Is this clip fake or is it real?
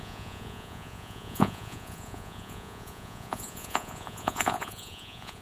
fake